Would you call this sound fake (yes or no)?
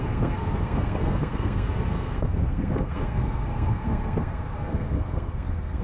yes